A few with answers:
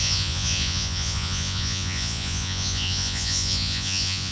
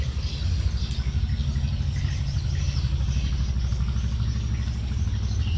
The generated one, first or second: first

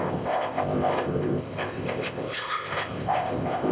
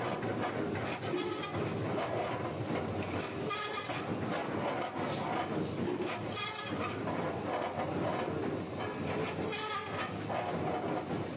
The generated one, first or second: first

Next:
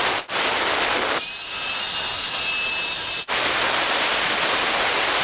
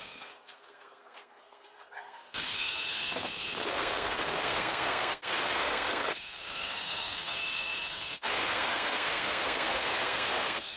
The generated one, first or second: second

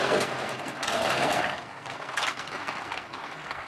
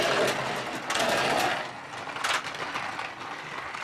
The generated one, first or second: first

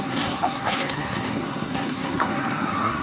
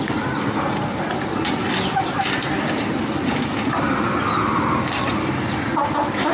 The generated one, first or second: first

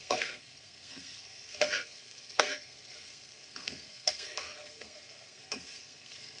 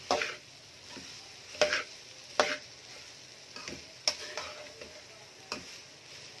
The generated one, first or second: first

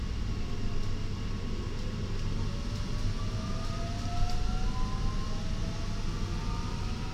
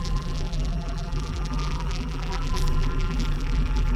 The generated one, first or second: second